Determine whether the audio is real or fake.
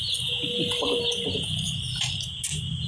real